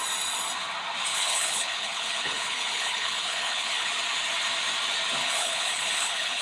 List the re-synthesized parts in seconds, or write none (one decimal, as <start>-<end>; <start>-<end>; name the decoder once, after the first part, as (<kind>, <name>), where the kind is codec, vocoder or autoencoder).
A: 1.1-3.9 (codec, HILCodec); 5.2-6.4